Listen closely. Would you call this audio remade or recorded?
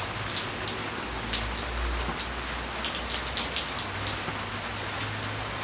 recorded